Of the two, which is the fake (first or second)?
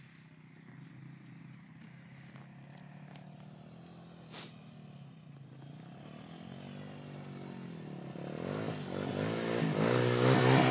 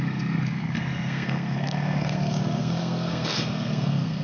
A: second